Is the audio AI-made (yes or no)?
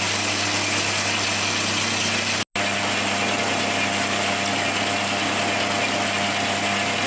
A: no